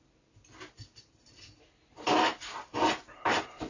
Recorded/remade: recorded